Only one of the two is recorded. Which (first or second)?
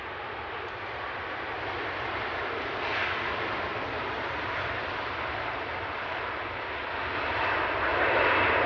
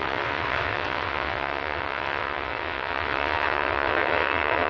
first